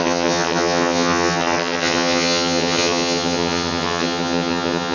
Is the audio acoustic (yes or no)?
no